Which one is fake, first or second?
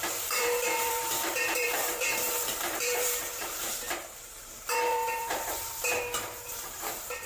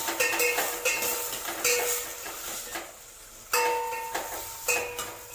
first